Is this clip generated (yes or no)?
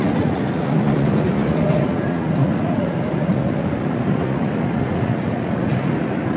yes